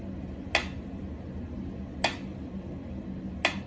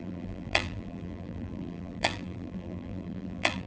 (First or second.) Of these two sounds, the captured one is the first